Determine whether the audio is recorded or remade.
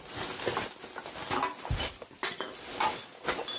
recorded